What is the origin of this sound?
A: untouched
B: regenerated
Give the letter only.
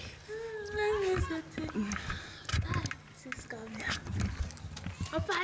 A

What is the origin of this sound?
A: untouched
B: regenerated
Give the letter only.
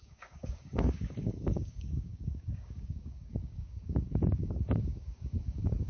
B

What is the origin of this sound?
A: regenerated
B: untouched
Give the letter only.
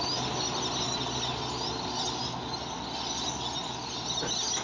B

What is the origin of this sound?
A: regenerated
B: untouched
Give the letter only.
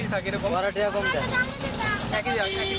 B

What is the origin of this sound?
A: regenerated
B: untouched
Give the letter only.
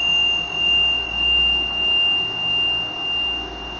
B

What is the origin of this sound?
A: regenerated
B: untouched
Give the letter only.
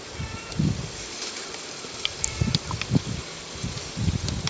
B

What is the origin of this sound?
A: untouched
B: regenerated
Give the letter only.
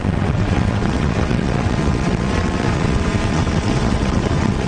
B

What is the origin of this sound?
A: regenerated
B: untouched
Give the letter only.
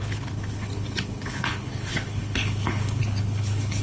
A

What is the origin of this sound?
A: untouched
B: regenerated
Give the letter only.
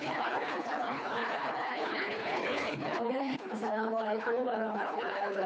B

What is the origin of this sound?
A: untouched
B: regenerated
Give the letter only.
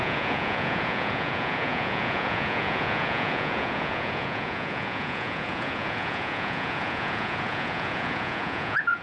B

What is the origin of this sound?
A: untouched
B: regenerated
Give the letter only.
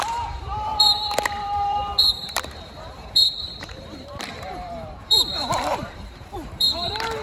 B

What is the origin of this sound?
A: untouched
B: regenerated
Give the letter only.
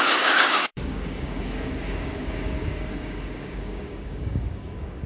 B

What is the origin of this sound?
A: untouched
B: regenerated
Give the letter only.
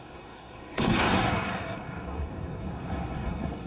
B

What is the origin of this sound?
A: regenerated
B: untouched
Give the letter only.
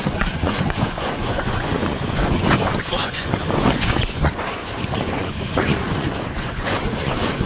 A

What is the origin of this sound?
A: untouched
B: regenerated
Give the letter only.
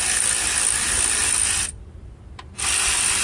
A